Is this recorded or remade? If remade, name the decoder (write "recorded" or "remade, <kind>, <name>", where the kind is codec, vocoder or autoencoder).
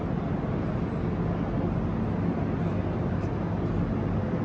recorded